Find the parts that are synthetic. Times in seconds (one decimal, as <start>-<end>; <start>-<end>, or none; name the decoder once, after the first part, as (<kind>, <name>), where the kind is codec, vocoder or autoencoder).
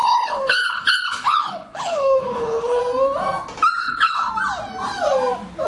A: 0.0-2.8 (codec, HILCodec); 3.8-4.3